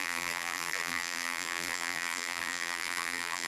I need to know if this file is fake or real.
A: fake